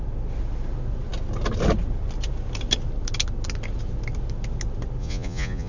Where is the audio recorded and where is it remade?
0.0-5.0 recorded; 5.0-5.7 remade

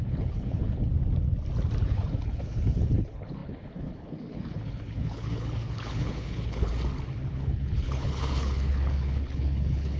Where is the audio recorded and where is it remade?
0.0-0.9 remade; 0.9-1.8 recorded; 1.8-6.7 remade; 6.7-7.3 recorded; 7.3-10.0 remade

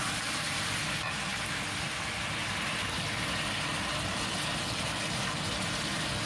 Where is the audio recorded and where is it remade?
0.0-6.3 recorded